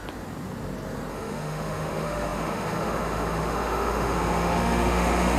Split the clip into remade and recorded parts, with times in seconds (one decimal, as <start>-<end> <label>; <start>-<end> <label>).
0.0-1.1 recorded; 1.1-5.4 remade